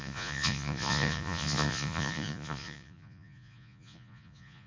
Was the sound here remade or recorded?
remade